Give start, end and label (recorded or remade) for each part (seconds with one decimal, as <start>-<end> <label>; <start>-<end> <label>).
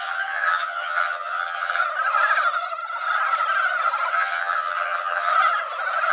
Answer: 0.0-1.8 remade; 1.8-4.1 recorded; 4.1-5.3 remade; 5.3-6.1 recorded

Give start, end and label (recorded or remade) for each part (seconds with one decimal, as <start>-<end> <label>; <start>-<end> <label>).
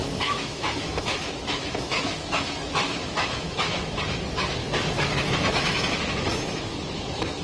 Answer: 0.0-4.0 remade; 4.0-4.6 recorded; 4.6-7.4 remade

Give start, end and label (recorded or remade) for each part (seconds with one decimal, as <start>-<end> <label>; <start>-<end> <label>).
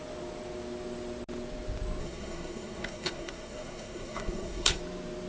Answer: 0.0-2.0 recorded; 2.0-4.8 remade; 4.8-5.3 recorded